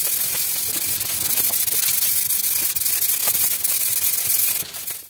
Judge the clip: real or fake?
real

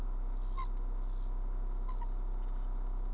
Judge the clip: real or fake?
real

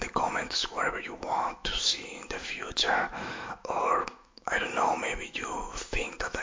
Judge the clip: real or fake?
fake